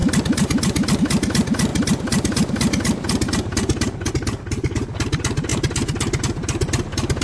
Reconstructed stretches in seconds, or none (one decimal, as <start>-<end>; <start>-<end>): none